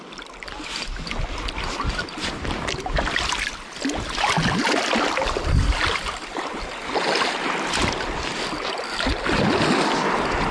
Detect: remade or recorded recorded